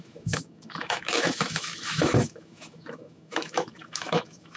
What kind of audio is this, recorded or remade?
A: remade